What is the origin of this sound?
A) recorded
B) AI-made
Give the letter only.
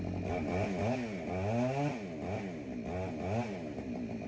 A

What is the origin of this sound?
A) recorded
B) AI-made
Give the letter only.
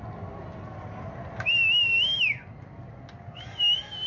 A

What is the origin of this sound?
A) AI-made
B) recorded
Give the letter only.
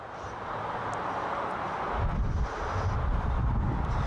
B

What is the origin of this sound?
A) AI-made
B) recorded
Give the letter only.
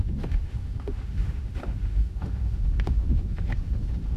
A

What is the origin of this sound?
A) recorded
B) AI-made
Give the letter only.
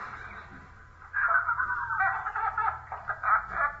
B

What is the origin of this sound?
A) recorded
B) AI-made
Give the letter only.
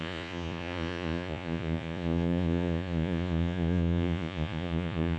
B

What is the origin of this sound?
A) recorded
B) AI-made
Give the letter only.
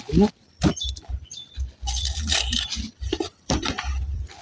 B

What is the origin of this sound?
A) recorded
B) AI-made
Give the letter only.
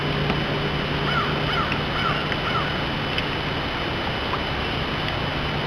A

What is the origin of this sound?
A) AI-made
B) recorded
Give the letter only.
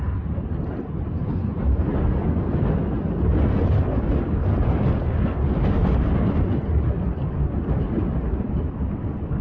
B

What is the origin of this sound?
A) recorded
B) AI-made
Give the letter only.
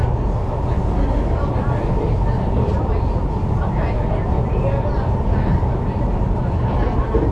A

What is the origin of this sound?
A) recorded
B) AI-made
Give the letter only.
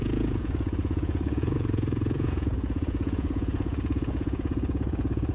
B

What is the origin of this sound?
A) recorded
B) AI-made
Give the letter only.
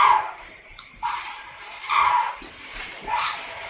B